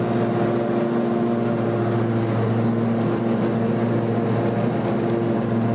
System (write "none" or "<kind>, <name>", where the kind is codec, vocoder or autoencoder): none